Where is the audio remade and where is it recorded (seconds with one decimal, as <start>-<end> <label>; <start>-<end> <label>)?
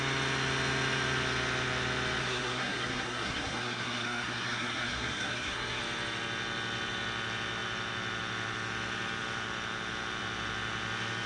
0.0-2.2 recorded; 2.2-5.8 remade; 5.8-11.3 recorded